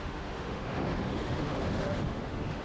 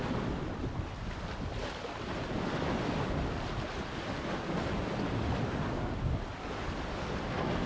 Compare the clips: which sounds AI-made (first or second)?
first